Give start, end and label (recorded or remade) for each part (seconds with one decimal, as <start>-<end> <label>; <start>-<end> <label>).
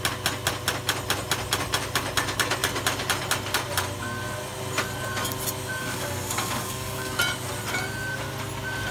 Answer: 0.0-5.8 recorded; 5.8-7.2 remade; 7.2-8.9 recorded